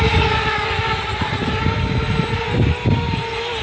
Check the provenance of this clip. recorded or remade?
recorded